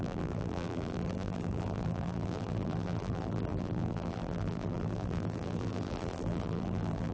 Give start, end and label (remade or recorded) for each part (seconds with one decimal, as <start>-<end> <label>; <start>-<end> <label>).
0.0-7.1 remade